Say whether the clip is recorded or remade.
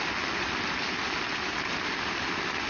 recorded